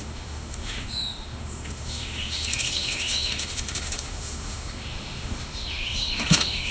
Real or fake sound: fake